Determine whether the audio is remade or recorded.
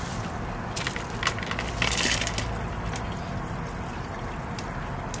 recorded